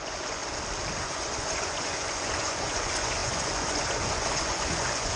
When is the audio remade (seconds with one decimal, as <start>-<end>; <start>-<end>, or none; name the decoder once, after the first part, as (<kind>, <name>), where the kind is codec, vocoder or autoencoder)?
0.0-0.4 (vocoder, Vocos); 1.0-5.2